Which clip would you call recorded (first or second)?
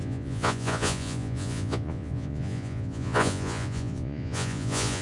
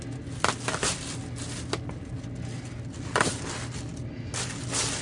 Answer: second